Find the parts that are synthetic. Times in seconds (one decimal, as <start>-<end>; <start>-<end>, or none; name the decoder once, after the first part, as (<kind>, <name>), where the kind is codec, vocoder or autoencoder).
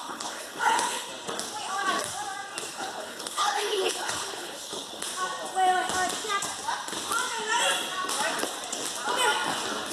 0.0-1.1 (codec, HILCodec); 2.7-5.1